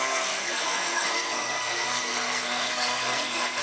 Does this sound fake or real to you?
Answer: fake